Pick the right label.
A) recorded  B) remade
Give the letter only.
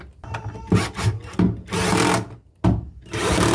A